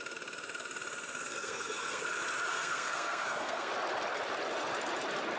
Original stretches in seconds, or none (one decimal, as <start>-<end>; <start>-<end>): 0.0-1.2; 2.0-2.5; 3.7-5.4